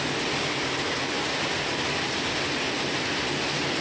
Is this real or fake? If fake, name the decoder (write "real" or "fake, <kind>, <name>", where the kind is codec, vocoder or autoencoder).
real